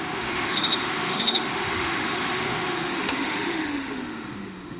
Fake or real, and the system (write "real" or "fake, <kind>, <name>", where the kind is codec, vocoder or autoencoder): fake, autoencoder, DAC-VAE